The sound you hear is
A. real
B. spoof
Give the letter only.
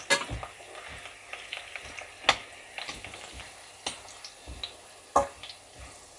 A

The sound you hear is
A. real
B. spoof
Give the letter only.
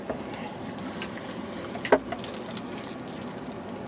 A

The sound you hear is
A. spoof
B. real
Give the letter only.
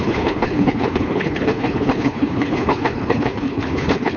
A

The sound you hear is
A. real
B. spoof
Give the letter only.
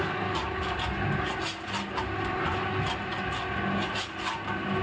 A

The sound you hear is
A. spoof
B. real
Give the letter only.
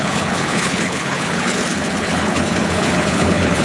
A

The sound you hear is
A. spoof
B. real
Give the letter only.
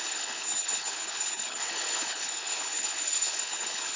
A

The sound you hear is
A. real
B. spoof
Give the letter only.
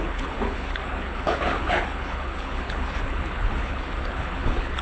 B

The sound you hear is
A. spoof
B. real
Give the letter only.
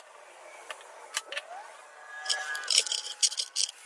B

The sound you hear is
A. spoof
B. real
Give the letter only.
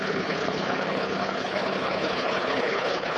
A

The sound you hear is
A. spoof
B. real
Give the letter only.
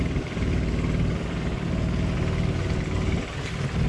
B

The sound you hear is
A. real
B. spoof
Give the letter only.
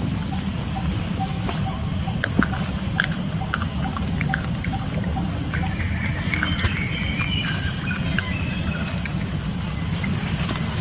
A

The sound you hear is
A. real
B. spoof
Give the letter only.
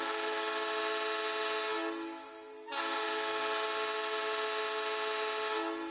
A